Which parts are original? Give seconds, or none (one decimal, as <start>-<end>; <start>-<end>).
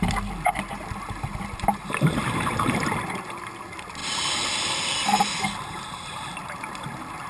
0.0-7.3